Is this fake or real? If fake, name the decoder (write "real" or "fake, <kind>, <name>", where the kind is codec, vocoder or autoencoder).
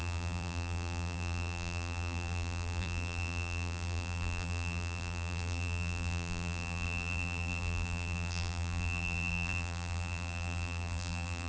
fake, vocoder, BigVGAN v2